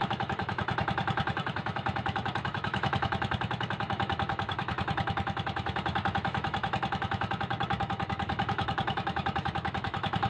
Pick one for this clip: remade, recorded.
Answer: remade